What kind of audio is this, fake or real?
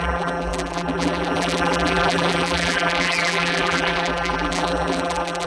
fake